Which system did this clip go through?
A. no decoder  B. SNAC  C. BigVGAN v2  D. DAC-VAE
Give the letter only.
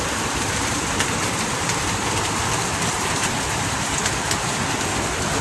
C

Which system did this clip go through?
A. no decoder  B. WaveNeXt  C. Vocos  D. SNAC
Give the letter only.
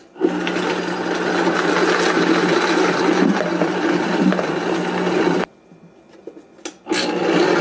A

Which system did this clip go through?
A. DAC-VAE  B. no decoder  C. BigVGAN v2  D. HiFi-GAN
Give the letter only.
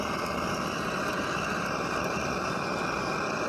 B